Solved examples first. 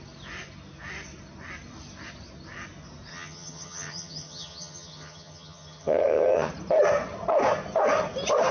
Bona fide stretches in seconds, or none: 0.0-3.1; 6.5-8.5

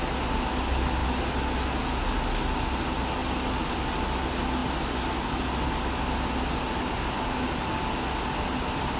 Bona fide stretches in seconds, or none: 0.0-9.0

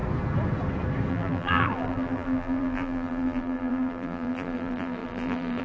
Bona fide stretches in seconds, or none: 0.0-1.1